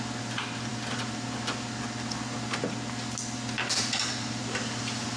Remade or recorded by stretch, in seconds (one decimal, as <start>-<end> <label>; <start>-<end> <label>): 0.0-5.2 recorded